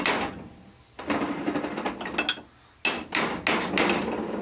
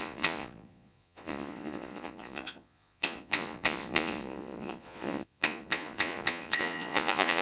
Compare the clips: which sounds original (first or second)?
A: first